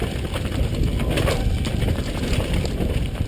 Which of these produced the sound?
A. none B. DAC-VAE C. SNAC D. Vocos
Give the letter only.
A